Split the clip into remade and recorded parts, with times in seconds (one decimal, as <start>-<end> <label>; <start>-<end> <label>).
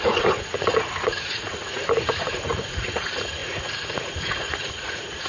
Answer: 0.0-5.3 remade